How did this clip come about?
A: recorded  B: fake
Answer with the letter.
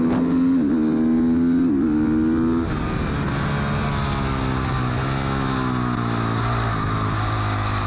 A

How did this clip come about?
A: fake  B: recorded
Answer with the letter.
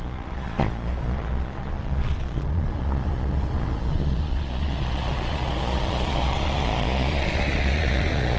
A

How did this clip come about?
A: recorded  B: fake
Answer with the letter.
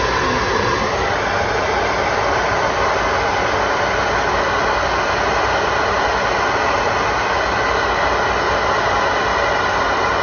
A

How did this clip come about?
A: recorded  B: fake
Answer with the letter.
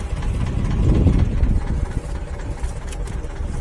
A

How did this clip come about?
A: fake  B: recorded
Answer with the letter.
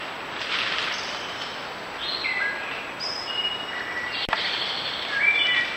B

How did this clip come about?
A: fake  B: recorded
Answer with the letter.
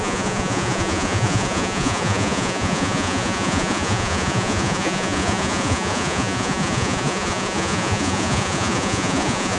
A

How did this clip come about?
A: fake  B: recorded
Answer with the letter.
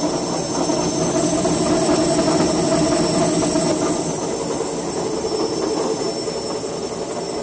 B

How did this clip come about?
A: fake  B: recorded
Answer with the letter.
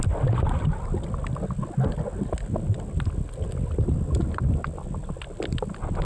B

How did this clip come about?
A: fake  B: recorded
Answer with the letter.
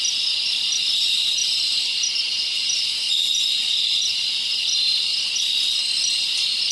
B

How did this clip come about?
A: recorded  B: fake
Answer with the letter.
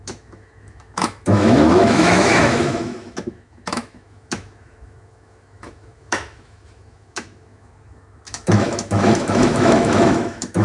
B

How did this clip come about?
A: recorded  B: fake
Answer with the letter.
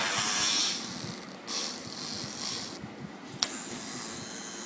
A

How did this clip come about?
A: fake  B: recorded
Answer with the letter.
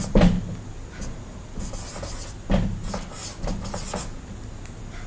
B